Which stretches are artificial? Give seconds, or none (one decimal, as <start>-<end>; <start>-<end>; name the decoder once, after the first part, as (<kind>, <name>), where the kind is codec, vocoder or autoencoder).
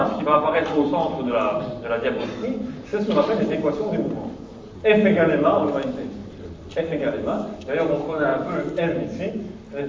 0.0-0.9 (vocoder, BigVGAN v2); 2.9-4.7; 6.2-6.8; 8.3-9.3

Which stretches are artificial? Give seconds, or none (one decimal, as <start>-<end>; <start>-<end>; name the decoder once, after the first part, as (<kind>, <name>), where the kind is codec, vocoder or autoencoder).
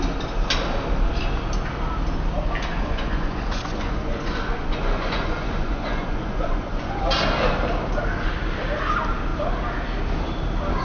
2.7-7.0 (vocoder, Vocos)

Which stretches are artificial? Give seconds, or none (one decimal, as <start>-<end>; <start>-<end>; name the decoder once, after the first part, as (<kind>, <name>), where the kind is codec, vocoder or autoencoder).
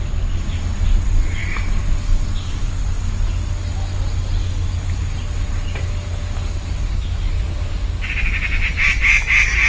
none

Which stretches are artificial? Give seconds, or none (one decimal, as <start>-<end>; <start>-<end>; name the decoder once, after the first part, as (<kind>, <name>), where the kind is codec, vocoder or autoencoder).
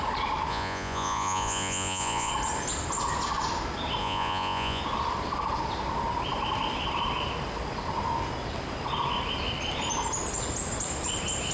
0.5-2.3 (vocoder, Vocos); 4.0-4.8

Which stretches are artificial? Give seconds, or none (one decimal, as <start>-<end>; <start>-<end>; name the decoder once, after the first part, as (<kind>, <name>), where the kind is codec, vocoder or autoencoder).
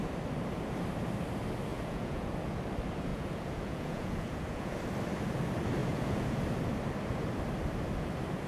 1.7-2.6 (vocoder, Vocos); 3.1-4.8; 5.8-6.4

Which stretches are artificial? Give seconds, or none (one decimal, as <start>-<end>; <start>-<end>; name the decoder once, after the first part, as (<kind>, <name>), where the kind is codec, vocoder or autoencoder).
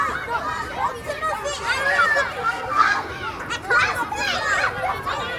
2.4-3.1 (codec, SNAC)